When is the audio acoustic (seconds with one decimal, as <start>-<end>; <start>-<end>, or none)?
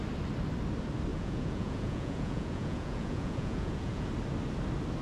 0.0-1.1; 4.1-5.0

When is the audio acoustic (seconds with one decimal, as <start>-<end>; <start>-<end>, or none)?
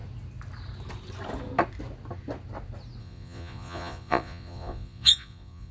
0.0-3.0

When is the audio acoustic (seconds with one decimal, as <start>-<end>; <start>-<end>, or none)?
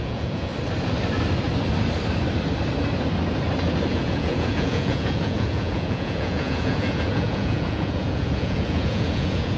0.5-3.9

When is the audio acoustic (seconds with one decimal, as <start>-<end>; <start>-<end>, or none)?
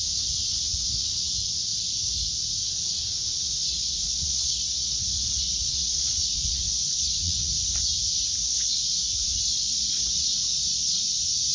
0.0-3.6; 7.8-8.4; 11.0-11.5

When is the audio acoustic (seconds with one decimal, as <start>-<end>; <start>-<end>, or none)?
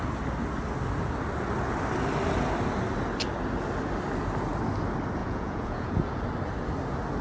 0.0-5.2; 6.2-7.2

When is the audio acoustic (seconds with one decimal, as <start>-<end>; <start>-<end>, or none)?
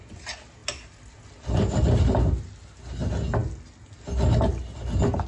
0.0-5.3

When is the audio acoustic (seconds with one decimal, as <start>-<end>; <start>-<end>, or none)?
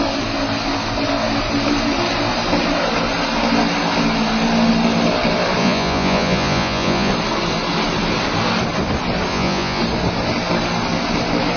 0.0-5.6; 7.1-9.3; 9.8-11.6